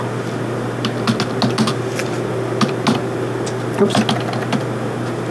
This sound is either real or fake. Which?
real